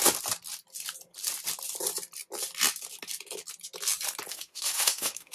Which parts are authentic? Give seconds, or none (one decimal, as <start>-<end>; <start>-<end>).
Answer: 0.0-4.3

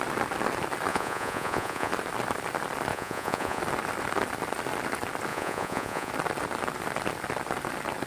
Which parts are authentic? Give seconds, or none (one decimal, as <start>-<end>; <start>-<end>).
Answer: 0.0-0.9; 1.9-2.9; 3.6-5.3; 6.1-8.1

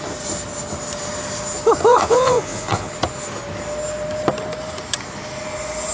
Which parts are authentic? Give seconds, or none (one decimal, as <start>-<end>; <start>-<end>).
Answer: 0.0-1.9; 2.9-5.9

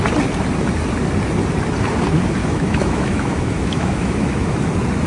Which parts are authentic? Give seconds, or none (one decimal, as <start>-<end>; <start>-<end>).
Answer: 0.0-2.4; 4.5-5.1

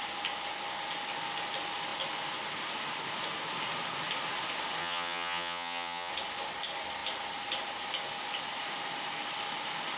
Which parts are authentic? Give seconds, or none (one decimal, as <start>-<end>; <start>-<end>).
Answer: 0.0-4.8; 6.1-10.0